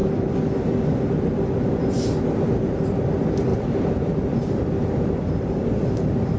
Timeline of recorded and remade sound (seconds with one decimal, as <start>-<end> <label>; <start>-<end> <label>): 0.0-3.5 recorded; 3.5-6.4 remade

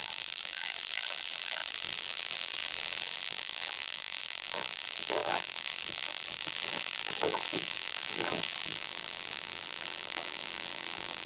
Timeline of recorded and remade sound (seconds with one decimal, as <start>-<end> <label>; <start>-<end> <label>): 0.0-11.3 remade